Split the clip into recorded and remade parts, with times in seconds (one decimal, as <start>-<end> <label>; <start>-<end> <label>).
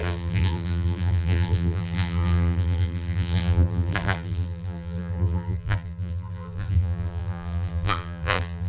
0.0-8.7 remade